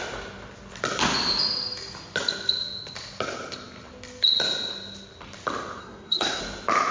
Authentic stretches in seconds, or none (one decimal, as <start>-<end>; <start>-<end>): 0.0-5.8; 6.4-6.9